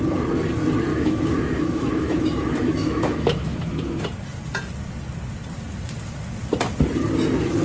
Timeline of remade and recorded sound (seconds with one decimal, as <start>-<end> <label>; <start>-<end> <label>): 0.0-0.9 recorded; 0.9-4.0 remade; 4.0-7.6 recorded